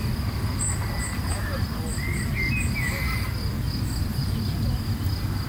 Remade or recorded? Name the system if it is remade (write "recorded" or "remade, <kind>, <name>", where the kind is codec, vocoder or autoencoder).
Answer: recorded